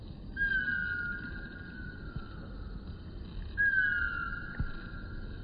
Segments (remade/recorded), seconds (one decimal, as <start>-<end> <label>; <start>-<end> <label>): 0.0-5.4 recorded